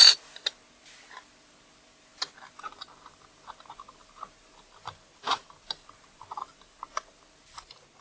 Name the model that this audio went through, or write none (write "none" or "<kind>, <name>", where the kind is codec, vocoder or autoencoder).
none